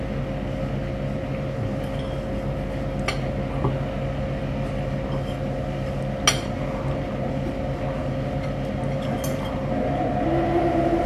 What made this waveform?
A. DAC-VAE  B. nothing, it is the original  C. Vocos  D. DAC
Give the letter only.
B